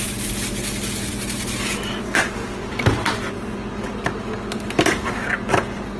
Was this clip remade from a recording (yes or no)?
no